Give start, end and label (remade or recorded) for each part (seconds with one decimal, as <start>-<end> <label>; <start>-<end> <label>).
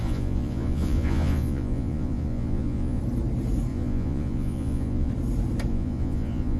0.0-3.0 remade; 3.0-3.7 recorded; 3.7-5.1 remade; 5.1-5.7 recorded; 5.7-6.6 remade